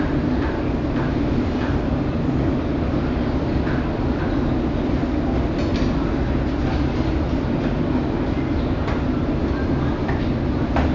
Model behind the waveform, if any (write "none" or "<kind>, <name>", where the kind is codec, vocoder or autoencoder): none